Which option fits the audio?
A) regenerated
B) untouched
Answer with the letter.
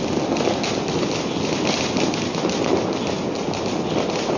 B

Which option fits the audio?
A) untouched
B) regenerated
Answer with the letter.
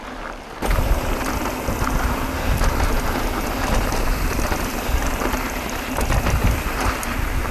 A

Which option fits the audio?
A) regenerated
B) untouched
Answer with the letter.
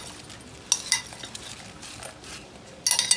B